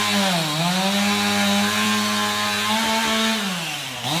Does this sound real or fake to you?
real